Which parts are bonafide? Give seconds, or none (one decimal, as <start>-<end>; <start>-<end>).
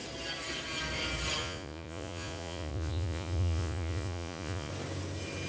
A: 0.0-1.4; 4.7-5.5